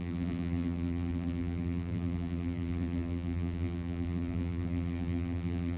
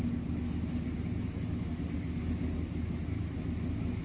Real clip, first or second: second